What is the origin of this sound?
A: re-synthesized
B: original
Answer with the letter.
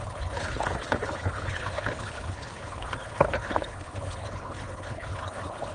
A